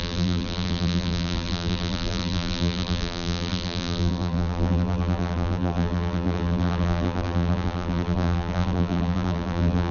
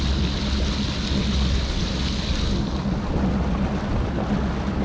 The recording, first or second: second